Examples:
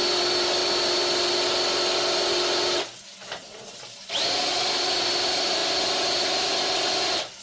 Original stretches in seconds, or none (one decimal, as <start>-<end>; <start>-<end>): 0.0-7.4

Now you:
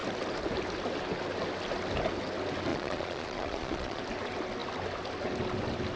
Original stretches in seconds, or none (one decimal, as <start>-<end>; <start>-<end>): 0.0-2.7; 4.0-6.0

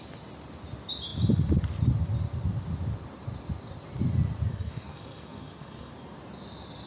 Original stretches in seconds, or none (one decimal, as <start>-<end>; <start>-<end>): 0.0-4.5; 5.9-6.9